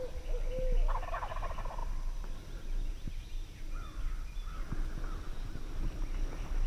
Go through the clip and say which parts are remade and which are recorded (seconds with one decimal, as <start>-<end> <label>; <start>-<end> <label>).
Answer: 0.0-6.7 recorded